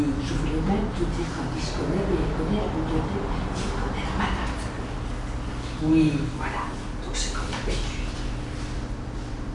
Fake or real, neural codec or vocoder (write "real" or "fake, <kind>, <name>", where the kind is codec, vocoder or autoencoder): real